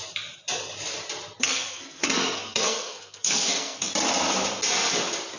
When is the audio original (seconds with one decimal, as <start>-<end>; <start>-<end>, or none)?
0.0-1.4; 3.9-5.4